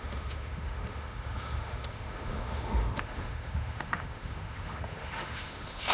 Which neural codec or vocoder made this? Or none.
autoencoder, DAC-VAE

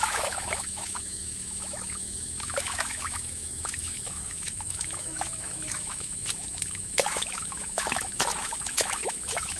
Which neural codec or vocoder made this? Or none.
autoencoder, DAC-VAE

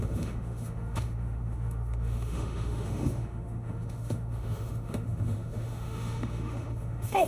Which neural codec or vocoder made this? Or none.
autoencoder, DAC-VAE